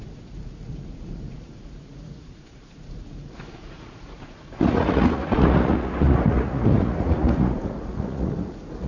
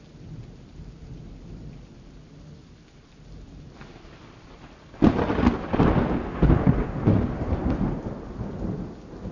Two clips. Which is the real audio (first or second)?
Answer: second